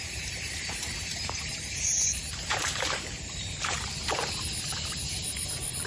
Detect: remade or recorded remade